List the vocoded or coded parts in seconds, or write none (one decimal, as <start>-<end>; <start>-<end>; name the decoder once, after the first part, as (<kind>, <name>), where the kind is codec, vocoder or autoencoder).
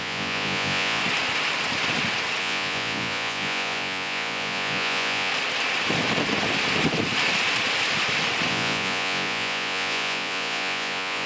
0.0-1.0 (vocoder, Vocos); 2.4-5.3; 8.5-11.3